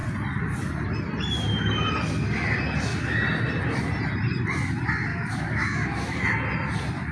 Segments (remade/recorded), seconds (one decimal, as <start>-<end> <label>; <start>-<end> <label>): 0.0-5.1 recorded; 5.1-6.2 remade; 6.2-7.1 recorded